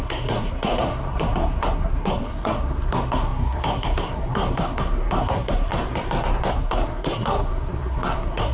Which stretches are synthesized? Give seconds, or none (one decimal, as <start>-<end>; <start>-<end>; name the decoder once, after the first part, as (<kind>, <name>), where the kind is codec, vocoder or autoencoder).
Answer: 0.0-5.7 (codec, SNAC); 6.5-8.5